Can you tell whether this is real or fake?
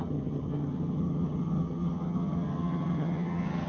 fake